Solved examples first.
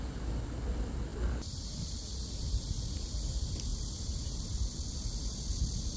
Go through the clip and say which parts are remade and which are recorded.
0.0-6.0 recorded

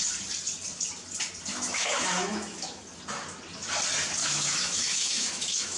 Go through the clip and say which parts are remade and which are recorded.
0.0-1.5 recorded; 1.5-2.8 remade; 2.8-4.2 recorded; 4.2-5.8 remade

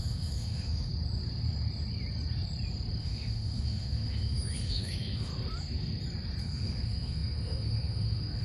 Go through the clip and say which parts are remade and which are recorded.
0.0-0.9 remade; 0.9-3.0 recorded; 3.0-5.3 remade; 5.3-6.4 recorded; 6.4-8.4 remade

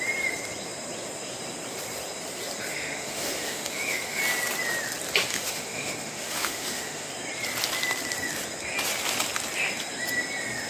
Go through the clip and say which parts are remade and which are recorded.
0.0-2.7 recorded; 2.7-4.2 remade; 4.2-5.3 recorded; 5.3-7.1 remade; 7.1-10.7 recorded